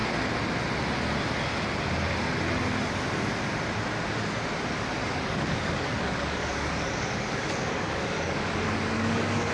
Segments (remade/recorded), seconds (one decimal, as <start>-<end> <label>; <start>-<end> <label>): 0.0-5.0 recorded; 5.0-9.5 remade